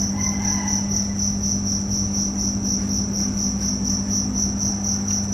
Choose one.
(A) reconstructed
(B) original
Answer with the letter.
B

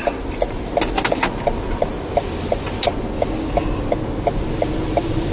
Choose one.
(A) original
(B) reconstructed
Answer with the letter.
A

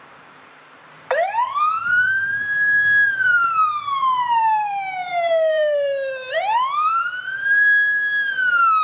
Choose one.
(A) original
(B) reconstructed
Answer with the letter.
B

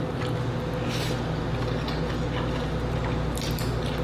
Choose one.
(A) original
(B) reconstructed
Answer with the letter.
A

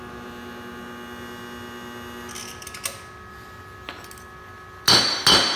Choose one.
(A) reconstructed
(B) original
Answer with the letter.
B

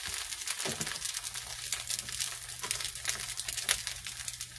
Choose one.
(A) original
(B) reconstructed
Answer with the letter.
A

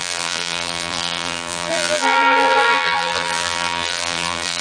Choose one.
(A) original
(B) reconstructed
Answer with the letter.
B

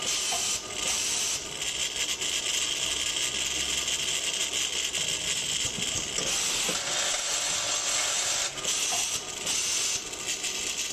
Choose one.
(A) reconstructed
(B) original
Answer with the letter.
B